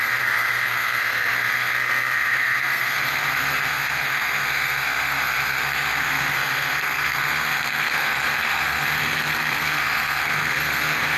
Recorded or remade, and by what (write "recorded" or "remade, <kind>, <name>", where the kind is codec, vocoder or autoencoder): remade, codec, SNAC